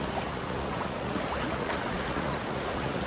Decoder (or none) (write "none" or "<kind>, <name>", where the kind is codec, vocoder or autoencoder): vocoder, Vocos